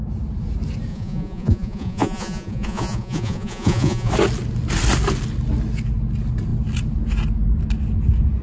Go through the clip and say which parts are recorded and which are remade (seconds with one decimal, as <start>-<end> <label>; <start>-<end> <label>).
0.0-0.9 recorded; 0.9-4.1 remade; 4.1-8.4 recorded